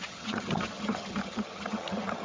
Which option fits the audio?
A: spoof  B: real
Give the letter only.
A